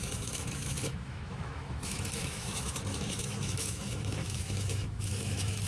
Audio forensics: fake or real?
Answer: fake